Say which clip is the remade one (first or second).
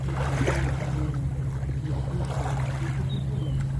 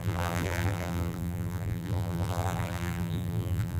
second